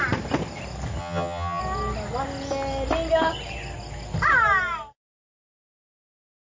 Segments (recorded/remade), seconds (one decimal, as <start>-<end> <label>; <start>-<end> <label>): 0.0-1.0 recorded; 1.0-1.6 remade; 1.6-6.5 recorded